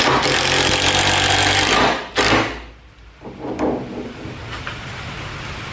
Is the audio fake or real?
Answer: real